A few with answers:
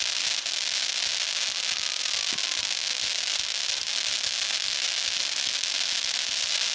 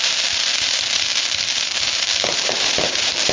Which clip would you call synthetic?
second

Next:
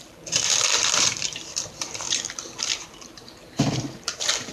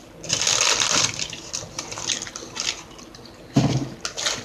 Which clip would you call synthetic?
first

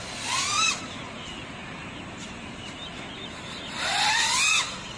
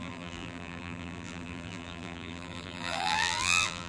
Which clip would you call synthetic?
second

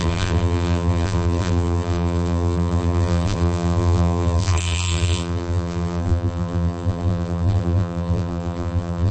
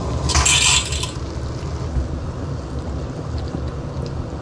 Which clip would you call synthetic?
first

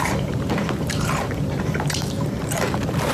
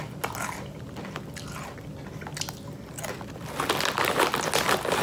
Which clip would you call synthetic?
first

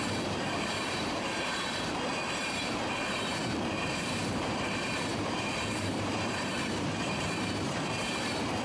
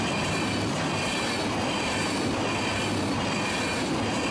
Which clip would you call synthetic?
first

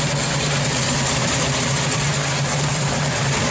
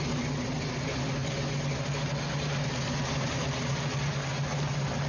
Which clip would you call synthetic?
first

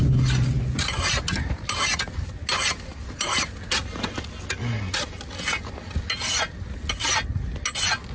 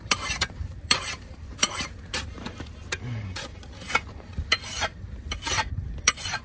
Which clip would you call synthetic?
second